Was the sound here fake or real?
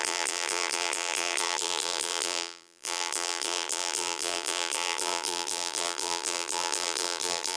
fake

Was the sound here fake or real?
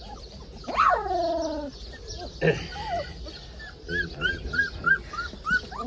real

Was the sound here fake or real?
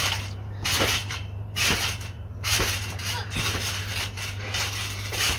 fake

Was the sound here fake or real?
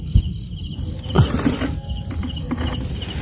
real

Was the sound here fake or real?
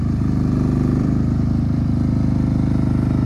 fake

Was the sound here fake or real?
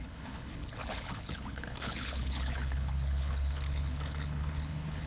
fake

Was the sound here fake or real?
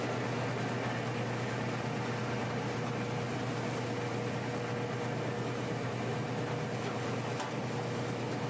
real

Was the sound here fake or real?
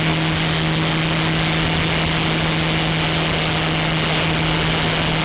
real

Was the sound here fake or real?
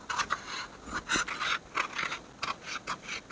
real